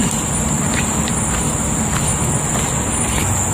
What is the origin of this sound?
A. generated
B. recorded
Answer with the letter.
B